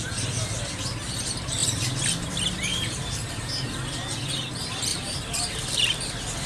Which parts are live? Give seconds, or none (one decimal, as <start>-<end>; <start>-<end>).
0.0-1.6; 2.3-2.7; 3.3-4.9; 6.1-6.5